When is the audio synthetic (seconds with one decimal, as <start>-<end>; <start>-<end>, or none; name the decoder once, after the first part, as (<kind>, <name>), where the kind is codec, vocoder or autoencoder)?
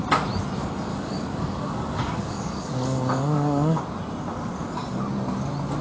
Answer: 0.9-3.8 (codec, DAC)